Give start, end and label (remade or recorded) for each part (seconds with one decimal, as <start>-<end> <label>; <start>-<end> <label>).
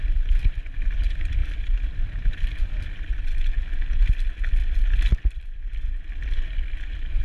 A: 0.0-4.6 recorded; 4.6-5.7 remade; 5.7-7.2 recorded